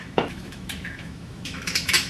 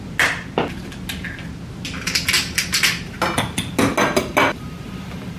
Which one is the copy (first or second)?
first